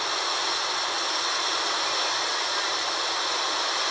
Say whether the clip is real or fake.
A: real